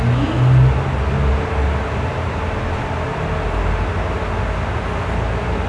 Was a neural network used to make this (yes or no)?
no